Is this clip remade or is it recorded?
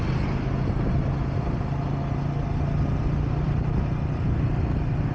recorded